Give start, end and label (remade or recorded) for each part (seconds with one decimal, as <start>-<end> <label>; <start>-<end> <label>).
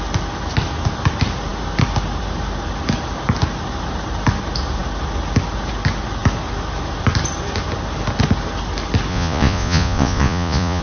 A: 0.0-9.1 recorded; 9.1-10.8 remade